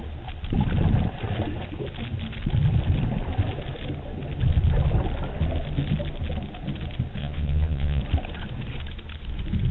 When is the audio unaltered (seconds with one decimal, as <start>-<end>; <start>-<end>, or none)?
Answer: 0.0-7.2; 8.0-9.7